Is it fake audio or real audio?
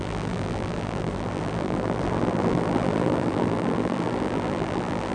fake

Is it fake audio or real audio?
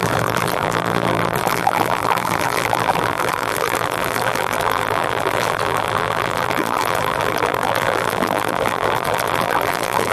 fake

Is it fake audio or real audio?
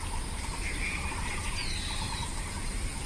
fake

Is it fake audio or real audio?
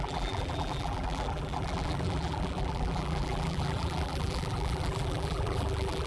fake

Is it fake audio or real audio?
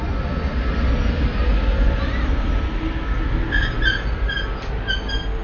real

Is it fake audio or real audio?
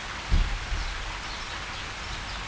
real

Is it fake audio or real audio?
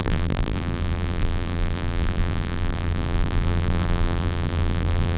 fake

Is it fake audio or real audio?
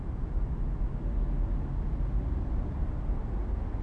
real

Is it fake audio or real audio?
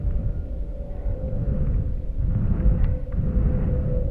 real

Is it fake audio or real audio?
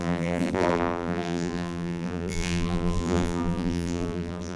fake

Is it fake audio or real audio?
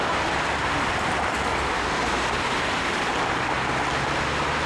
real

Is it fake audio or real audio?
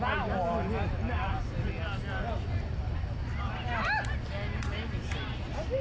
real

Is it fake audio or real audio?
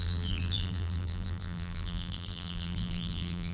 fake